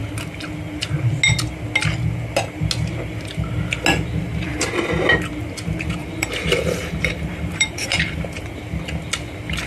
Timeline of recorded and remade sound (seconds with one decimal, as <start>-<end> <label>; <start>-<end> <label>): 0.0-6.0 recorded; 6.0-8.4 remade; 8.4-9.7 recorded